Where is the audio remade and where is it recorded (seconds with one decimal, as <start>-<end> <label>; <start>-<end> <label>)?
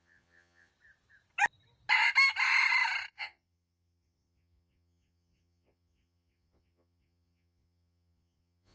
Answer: 0.0-0.7 remade; 0.7-3.1 recorded; 3.1-8.7 remade